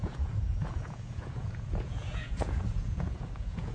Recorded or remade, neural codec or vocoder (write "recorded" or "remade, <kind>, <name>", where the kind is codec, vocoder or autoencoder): remade, vocoder, Vocos